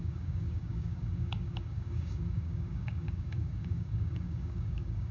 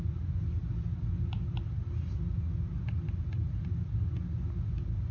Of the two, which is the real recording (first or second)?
second